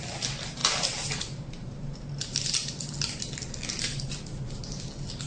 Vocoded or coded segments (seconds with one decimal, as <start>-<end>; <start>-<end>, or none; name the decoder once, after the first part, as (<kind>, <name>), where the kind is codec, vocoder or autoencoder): none